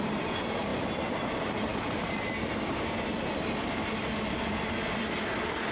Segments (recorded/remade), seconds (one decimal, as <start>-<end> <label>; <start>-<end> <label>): 0.0-5.7 recorded

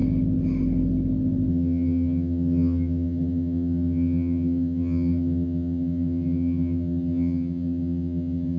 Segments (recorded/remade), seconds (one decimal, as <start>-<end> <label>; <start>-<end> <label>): 0.0-1.5 recorded; 1.5-8.6 remade